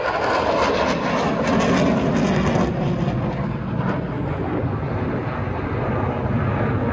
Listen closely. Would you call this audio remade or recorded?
recorded